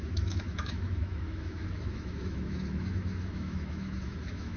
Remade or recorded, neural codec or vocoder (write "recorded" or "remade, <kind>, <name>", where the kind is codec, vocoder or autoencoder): remade, autoencoder, DAC-VAE